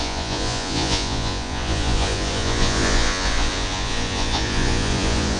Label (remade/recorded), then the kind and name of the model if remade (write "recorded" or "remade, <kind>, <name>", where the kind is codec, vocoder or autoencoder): remade, vocoder, Vocos